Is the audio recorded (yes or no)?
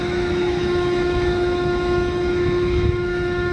no